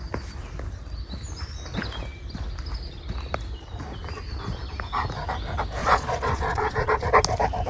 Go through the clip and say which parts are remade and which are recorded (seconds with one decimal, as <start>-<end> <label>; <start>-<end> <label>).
0.0-5.8 recorded; 5.8-7.1 remade; 7.1-7.7 recorded